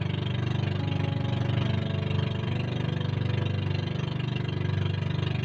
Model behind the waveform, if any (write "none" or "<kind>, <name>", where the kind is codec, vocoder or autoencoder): none